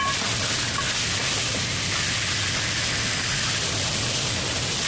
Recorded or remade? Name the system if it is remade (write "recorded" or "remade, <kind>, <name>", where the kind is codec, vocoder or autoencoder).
recorded